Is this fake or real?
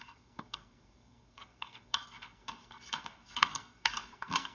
fake